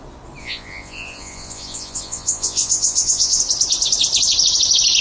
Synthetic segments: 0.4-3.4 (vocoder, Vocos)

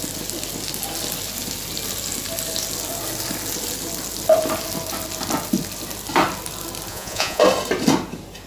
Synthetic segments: 6.9-7.4 (vocoder, Vocos)

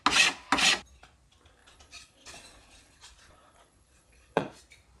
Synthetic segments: 1.6-4.6 (vocoder, Vocos)